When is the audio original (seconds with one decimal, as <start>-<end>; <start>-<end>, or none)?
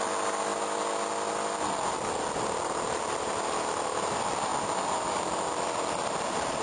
0.0-6.6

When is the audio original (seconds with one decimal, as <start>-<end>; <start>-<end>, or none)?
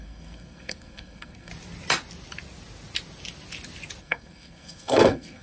1.5-4.0